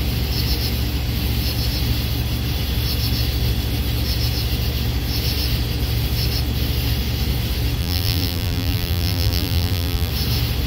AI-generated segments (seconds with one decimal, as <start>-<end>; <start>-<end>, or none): 7.8-10.1